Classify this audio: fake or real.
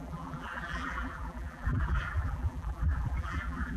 fake